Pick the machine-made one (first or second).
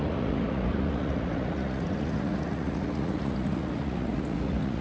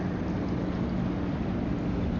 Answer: first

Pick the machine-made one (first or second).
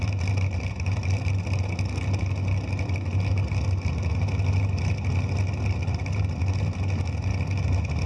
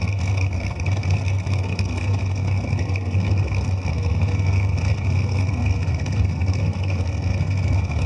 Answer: second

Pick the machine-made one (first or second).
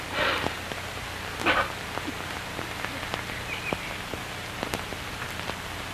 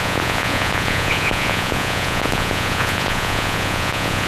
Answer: second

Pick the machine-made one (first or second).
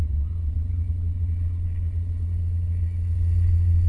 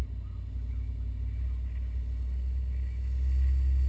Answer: first